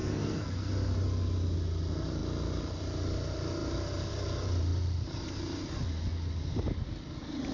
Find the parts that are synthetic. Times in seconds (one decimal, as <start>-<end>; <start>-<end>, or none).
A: 0.0-0.7